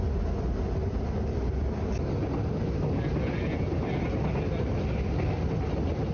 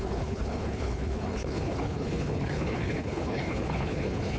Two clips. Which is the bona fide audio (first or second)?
first